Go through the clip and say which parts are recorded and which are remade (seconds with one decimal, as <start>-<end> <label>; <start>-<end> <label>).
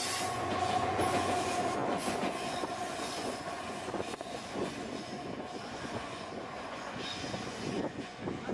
0.0-8.5 remade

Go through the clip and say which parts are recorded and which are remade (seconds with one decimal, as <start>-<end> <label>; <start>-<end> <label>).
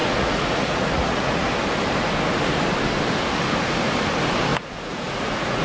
0.0-1.5 remade; 1.5-4.5 recorded; 4.5-5.6 remade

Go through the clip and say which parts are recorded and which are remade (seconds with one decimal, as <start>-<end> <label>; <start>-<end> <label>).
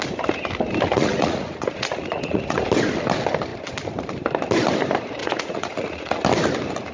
0.0-0.9 recorded; 0.9-2.6 remade; 2.6-5.2 recorded; 5.2-6.2 remade; 6.2-6.9 recorded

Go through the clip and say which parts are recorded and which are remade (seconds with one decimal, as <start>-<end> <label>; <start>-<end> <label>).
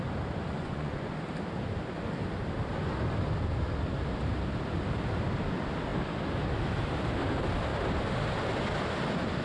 0.0-0.5 recorded; 0.5-1.1 remade; 1.1-9.4 recorded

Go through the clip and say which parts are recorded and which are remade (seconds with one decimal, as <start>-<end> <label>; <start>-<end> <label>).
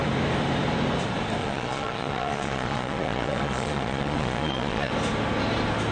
0.0-1.4 recorded; 1.4-4.9 remade; 4.9-5.9 recorded